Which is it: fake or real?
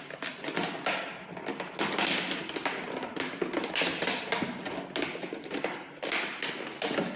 real